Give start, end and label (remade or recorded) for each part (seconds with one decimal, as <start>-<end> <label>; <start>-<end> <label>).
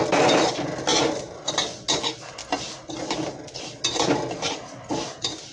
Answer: 0.0-0.9 recorded; 0.9-1.7 remade; 1.7-5.5 recorded